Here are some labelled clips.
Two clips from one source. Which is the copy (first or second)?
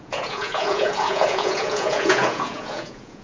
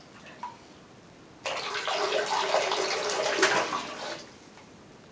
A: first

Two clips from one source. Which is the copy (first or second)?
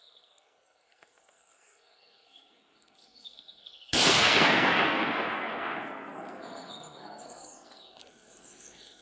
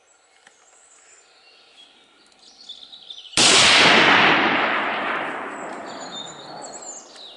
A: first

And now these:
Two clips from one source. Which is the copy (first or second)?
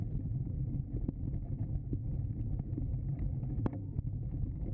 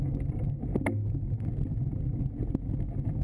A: first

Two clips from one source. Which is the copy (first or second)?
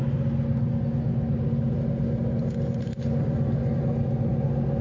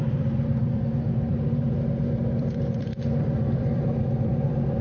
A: second